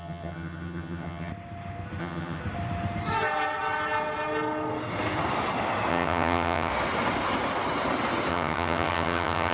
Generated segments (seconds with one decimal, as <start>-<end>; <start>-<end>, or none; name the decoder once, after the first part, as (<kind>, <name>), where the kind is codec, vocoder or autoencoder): 0.0-1.3 (vocoder, HiFi-GAN); 2.0-2.4; 5.9-6.7; 8.3-9.5